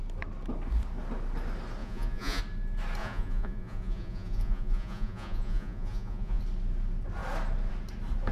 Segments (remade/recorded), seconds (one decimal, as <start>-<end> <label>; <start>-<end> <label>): 0.0-1.8 recorded; 1.8-2.4 remade; 2.4-3.0 recorded; 3.0-6.4 remade; 6.4-8.3 recorded